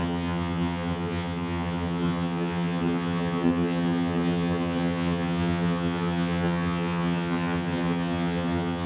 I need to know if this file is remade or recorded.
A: remade